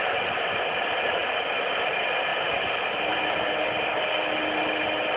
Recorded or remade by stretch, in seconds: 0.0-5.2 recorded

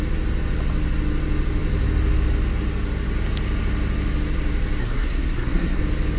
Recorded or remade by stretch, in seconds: 0.0-4.8 recorded; 4.8-5.8 remade; 5.8-6.2 recorded

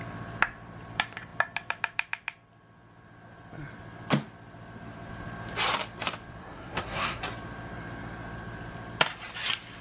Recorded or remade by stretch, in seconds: 0.0-6.4 recorded; 6.4-7.2 remade; 7.2-9.8 recorded

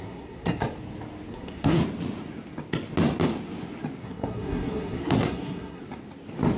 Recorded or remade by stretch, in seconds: 0.0-0.6 remade; 0.6-1.3 recorded; 1.3-1.8 remade; 1.8-4.0 recorded; 4.0-5.8 remade; 5.8-6.6 recorded

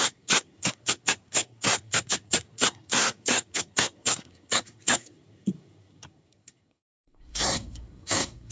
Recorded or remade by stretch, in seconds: 0.0-8.5 remade

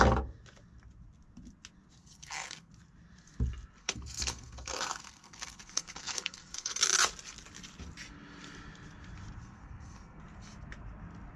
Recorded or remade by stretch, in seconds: 0.0-2.0 recorded; 2.0-2.7 remade; 2.7-3.8 recorded; 3.8-6.8 remade; 6.8-9.4 recorded; 9.4-10.2 remade; 10.2-11.4 recorded

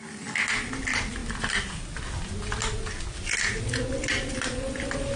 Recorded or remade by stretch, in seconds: 0.0-5.2 recorded